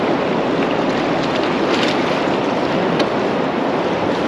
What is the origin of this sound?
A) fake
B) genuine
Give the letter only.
B